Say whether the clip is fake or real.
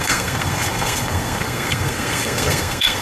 fake